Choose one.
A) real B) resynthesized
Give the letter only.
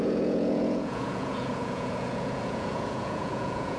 B